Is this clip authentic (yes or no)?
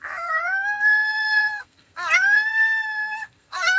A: no